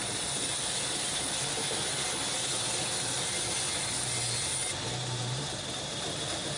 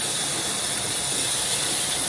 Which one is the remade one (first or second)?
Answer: second